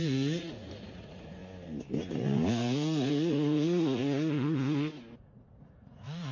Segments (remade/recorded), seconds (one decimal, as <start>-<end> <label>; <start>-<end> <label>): 0.0-1.4 remade; 1.4-2.1 recorded; 2.1-4.0 remade; 4.0-5.2 recorded; 5.2-6.3 remade